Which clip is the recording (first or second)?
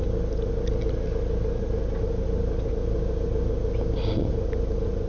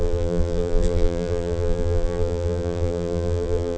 first